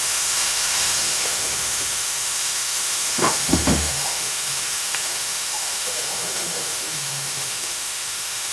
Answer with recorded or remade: remade